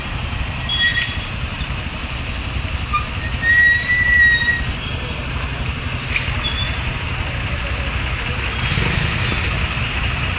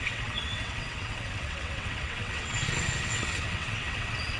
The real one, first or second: first